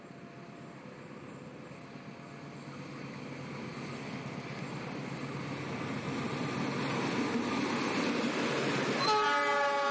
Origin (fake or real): real